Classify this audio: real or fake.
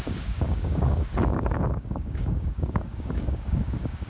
fake